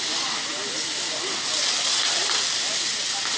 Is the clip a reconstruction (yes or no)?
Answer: no